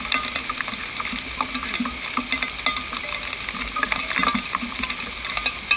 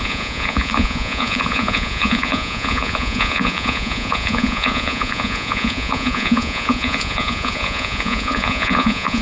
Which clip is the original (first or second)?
first